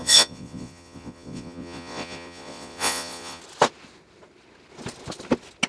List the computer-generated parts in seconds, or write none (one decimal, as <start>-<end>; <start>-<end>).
0.0-3.4